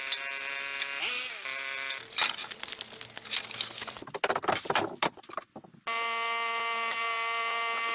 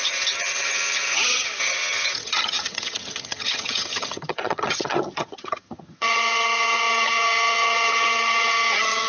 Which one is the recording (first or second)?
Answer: first